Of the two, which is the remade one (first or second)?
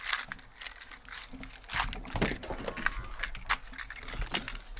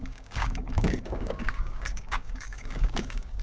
second